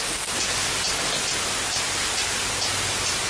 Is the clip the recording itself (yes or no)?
yes